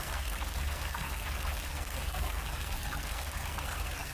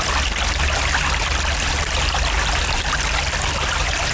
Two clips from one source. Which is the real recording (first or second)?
second